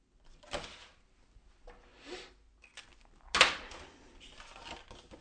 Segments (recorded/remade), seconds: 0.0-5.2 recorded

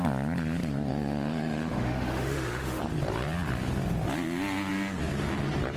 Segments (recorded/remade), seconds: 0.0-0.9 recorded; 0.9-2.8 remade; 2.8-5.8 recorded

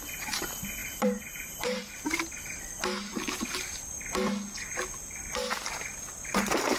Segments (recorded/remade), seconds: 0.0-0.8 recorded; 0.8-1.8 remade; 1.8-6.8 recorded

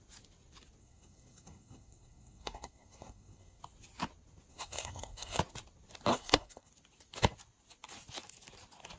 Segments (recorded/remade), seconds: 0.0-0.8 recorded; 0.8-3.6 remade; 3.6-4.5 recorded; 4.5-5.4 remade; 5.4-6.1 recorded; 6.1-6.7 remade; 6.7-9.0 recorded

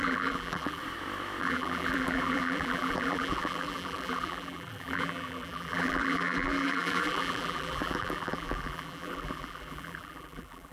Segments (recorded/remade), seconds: 0.0-0.8 remade; 0.8-1.4 recorded; 1.4-10.7 remade